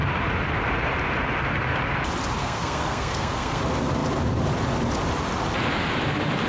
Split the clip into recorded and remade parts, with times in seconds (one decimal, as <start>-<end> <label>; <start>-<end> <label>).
0.0-2.4 recorded; 2.4-3.6 remade; 3.6-6.5 recorded